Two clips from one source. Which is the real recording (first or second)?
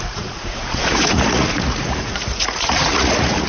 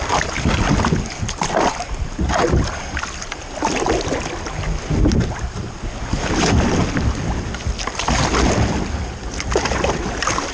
second